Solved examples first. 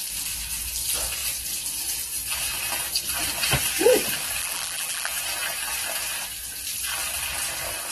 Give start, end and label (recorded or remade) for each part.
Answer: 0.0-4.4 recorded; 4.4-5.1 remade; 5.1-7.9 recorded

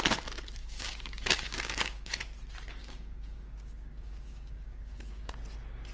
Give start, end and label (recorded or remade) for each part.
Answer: 0.0-0.6 recorded; 0.6-2.2 remade; 2.2-2.8 recorded; 2.8-5.3 remade; 5.3-5.9 recorded

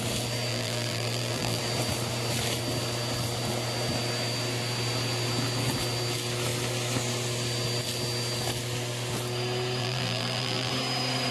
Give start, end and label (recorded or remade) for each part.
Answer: 0.0-0.5 recorded; 0.5-1.6 remade; 1.6-9.8 recorded; 9.8-10.7 remade; 10.7-11.3 recorded

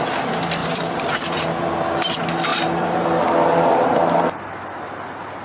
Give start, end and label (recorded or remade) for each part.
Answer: 0.0-0.6 recorded; 0.6-1.7 remade; 1.7-2.5 recorded; 2.5-3.2 remade; 3.2-5.4 recorded